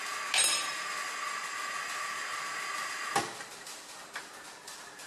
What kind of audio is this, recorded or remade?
recorded